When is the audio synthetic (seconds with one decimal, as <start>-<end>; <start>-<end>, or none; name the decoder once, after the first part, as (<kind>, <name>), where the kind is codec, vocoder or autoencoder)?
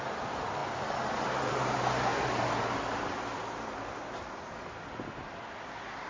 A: none